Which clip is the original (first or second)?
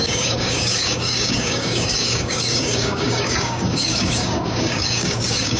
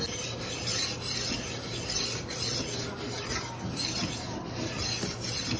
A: second